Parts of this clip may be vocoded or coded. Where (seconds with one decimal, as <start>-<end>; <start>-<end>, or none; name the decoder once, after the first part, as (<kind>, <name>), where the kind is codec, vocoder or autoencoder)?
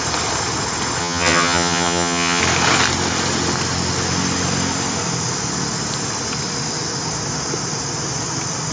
1.0-2.4 (vocoder, HiFi-GAN)